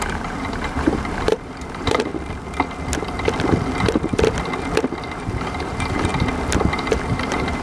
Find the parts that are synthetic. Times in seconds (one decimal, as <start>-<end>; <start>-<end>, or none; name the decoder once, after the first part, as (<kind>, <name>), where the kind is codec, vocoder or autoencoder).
0.0-2.1 (vocoder, BigVGAN v2); 5.2-6.1; 6.7-7.6